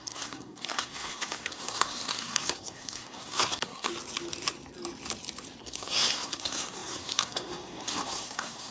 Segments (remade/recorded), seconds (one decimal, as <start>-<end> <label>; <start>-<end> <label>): 0.0-3.9 remade; 3.9-5.6 recorded; 5.6-8.7 remade